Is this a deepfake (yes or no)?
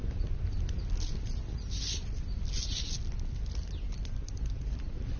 no